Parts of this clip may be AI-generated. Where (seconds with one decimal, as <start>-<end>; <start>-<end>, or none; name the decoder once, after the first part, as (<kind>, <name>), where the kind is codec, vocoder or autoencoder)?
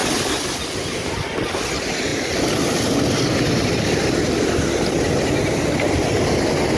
none